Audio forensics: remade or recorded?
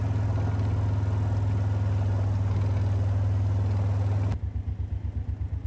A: recorded